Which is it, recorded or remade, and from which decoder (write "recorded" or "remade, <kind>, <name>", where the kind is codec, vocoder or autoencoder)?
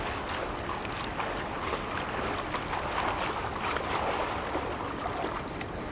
recorded